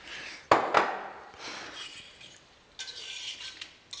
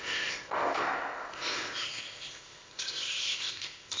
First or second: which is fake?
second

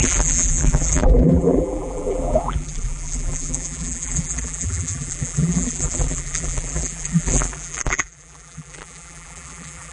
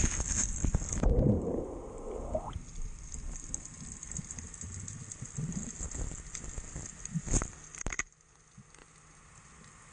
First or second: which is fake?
first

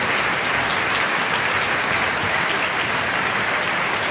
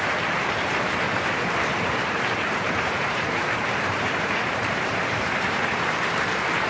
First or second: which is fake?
second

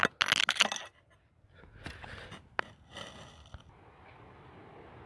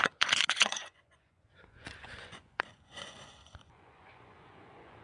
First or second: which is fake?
second